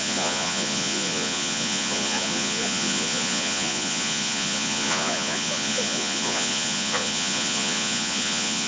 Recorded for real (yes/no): no